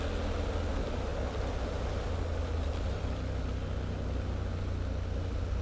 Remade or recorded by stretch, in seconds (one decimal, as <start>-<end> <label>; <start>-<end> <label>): 0.0-5.6 recorded